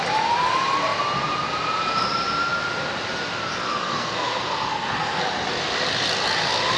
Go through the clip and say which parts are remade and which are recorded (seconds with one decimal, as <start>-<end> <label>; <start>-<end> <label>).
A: 0.0-3.5 recorded; 3.5-5.2 remade; 5.2-6.8 recorded